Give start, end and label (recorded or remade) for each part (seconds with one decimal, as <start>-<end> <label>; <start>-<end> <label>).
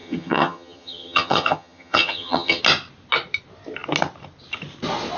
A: 0.0-2.6 remade; 2.6-5.2 recorded